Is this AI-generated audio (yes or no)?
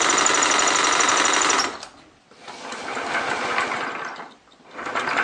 no